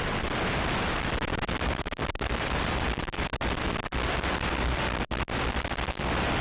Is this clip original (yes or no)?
yes